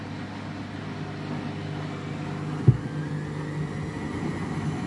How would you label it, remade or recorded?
recorded